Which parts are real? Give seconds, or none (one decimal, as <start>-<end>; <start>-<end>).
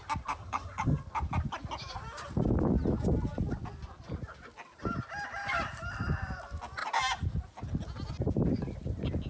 0.0-0.4; 1.0-9.3